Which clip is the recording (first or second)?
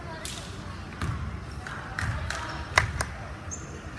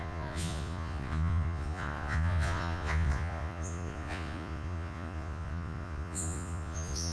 first